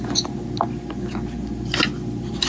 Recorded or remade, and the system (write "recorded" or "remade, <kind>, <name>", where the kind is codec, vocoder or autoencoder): recorded